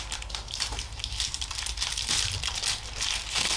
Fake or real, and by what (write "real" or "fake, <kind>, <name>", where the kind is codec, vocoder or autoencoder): fake, vocoder, BigVGAN v2